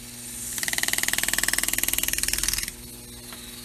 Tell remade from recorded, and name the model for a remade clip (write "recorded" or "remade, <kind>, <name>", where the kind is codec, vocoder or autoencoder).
recorded